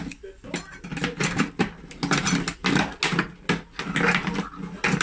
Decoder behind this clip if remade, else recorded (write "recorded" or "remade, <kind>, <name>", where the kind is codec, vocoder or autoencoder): recorded